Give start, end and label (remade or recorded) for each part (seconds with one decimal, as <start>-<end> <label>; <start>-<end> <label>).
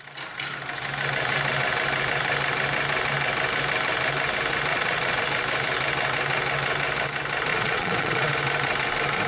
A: 0.0-4.7 recorded; 4.7-5.2 remade; 5.2-7.5 recorded; 7.5-8.3 remade; 8.3-9.3 recorded